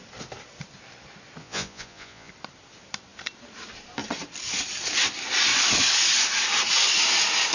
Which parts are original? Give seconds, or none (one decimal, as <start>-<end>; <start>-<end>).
0.0-1.4; 2.3-7.5